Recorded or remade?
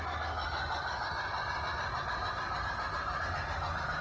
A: recorded